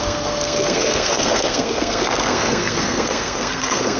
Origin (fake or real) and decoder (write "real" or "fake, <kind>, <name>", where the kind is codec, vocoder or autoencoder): fake, codec, SNAC